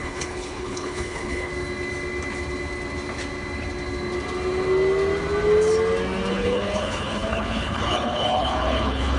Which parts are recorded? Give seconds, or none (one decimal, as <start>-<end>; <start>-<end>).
1.5-6.3